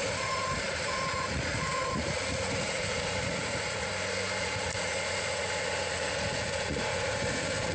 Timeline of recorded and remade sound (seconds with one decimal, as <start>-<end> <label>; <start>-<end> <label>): 0.0-3.9 remade; 3.9-4.4 recorded; 4.4-7.7 remade